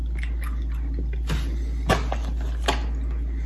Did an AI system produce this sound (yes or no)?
no